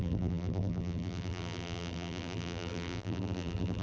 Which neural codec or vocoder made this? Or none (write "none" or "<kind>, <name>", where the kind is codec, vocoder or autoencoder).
vocoder, BigVGAN v2